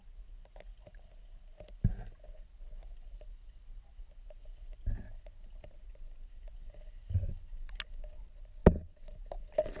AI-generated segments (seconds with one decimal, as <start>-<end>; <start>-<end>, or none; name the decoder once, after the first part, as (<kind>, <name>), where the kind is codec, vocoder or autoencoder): none